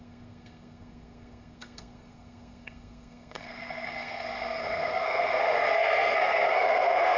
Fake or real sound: fake